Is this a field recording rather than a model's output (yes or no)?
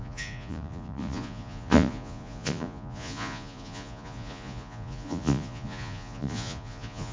no